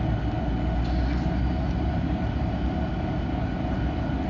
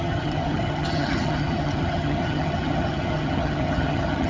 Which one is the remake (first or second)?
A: second